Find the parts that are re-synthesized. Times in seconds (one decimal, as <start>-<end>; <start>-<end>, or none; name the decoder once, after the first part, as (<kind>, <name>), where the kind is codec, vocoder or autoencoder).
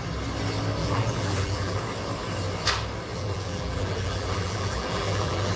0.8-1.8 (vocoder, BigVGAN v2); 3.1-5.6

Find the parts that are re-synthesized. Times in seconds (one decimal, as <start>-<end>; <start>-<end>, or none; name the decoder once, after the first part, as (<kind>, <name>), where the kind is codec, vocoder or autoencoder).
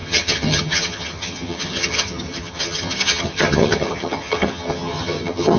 0.0-5.6 (vocoder, HiFi-GAN)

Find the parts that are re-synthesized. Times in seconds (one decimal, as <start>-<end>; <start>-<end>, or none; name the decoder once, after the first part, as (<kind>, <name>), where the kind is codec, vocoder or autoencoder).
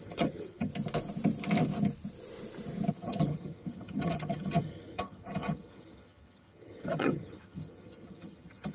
0.0-0.7 (vocoder, HiFi-GAN); 2.9-8.7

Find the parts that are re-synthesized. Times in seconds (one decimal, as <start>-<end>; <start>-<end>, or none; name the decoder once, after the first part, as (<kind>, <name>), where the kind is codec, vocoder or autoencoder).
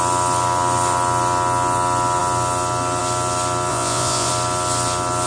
3.7-4.3 (vocoder, Vocos)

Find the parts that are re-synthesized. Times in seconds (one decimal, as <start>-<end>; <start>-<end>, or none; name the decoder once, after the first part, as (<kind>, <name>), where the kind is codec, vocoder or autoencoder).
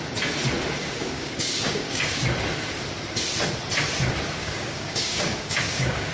0.8-2.2 (codec, DAC); 4.4-6.1